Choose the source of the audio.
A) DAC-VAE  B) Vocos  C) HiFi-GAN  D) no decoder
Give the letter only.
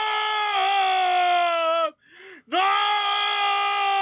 D